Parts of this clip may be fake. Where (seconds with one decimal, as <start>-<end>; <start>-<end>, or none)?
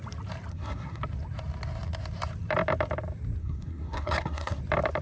0.5-1.0; 3.4-4.6